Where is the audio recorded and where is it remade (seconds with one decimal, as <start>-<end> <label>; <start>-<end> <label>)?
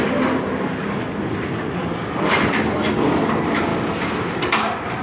0.0-5.0 recorded